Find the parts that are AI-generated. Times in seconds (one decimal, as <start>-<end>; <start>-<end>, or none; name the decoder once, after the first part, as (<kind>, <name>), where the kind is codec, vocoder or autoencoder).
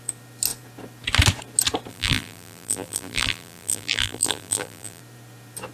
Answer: 1.9-5.0 (vocoder, BigVGAN v2)